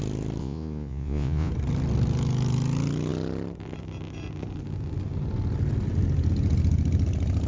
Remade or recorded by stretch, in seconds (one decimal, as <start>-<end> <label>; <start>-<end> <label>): 0.0-0.4 recorded; 0.4-1.5 remade; 1.5-7.5 recorded